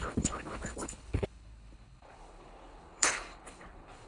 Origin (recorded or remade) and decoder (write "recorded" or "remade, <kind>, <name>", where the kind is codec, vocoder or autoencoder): remade, codec, HILCodec